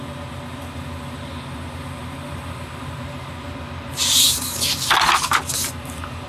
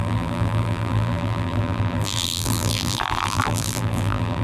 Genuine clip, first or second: first